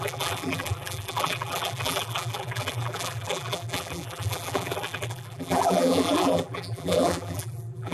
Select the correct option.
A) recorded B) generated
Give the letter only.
B